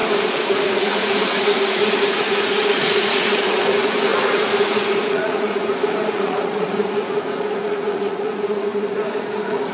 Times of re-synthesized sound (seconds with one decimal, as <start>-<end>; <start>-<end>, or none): 0.0-9.7